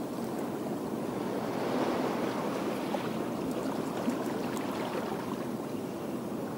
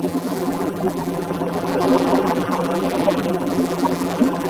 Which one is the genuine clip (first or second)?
first